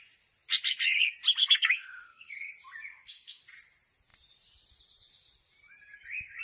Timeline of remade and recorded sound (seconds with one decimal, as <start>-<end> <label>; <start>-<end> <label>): 0.0-1.4 recorded; 1.4-2.4 remade; 2.4-2.9 recorded; 2.9-3.4 remade; 3.4-6.4 recorded